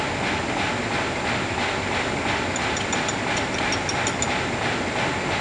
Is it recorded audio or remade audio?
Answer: recorded